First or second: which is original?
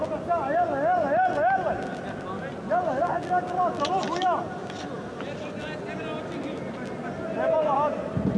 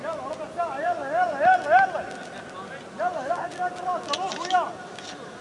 first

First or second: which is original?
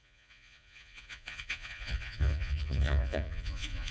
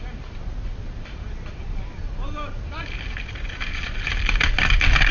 second